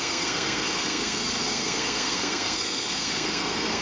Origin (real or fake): fake